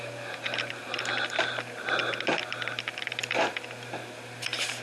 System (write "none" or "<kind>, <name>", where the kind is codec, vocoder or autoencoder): none